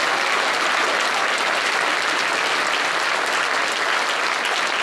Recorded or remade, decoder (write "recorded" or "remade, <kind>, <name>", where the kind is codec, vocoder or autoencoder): recorded